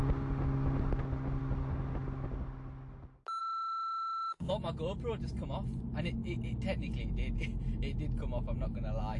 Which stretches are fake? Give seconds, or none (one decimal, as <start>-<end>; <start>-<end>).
3.4-4.5